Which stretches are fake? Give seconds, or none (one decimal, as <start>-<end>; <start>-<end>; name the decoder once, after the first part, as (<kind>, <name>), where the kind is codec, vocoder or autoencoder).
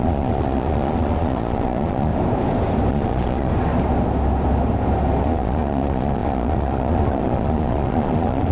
0.0-2.1 (vocoder, Vocos); 2.9-3.5; 5.2-8.5